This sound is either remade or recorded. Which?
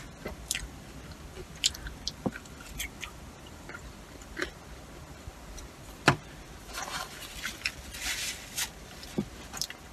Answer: remade